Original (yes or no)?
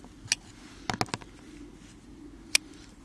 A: yes